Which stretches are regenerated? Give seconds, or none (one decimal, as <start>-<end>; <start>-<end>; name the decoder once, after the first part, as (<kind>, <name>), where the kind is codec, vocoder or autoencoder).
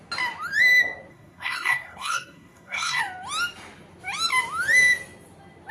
1.1-3.0 (codec, SNAC)